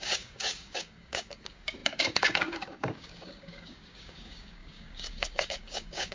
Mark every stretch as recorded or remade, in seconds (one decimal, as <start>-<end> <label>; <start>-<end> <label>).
0.0-6.1 remade